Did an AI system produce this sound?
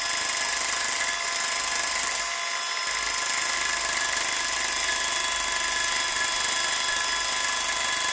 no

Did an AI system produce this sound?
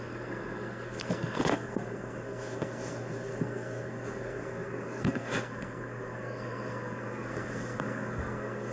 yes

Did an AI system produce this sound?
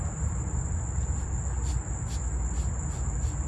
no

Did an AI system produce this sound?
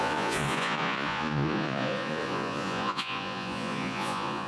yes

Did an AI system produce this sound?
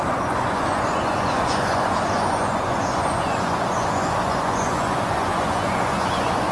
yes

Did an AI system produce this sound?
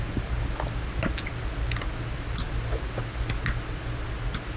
no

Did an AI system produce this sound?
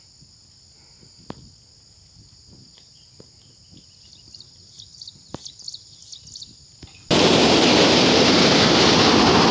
no